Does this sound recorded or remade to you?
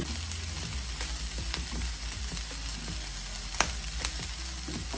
recorded